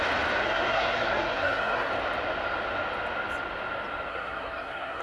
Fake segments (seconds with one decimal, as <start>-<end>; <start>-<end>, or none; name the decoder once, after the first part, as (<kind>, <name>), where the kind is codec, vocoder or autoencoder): 0.4-1.9 (codec, SNAC); 4.1-5.0